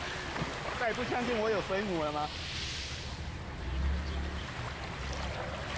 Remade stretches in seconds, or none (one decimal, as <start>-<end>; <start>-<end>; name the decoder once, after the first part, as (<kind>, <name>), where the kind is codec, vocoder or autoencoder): none